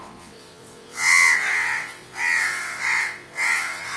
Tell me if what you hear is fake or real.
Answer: fake